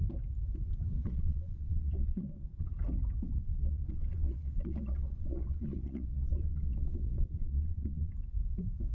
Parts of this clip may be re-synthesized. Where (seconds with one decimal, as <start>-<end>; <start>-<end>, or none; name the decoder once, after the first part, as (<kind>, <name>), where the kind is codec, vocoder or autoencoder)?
0.9-2.7 (vocoder, Vocos); 3.4-8.1